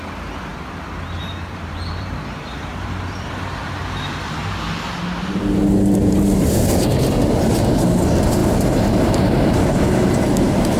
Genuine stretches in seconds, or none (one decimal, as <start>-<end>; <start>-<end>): 0.0-0.5; 3.3-8.4; 9.8-10.8